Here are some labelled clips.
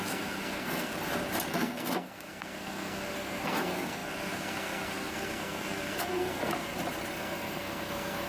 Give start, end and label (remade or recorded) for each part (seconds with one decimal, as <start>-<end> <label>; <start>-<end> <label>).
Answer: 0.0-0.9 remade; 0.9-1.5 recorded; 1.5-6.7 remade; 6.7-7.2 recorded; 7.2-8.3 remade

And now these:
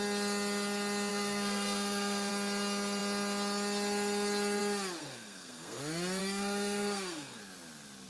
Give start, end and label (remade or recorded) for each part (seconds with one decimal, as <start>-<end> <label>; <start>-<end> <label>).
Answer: 0.0-1.1 recorded; 1.1-2.3 remade; 2.3-5.0 recorded; 5.0-5.8 remade; 5.8-6.2 recorded; 6.2-7.4 remade; 7.4-8.1 recorded

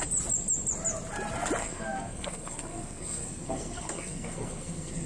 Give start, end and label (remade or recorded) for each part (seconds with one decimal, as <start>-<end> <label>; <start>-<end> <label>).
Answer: 0.0-1.6 recorded; 1.6-5.1 remade